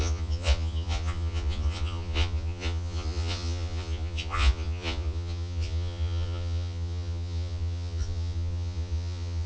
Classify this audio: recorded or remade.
remade